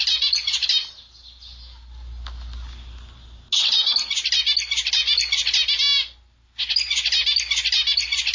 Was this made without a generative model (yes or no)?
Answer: yes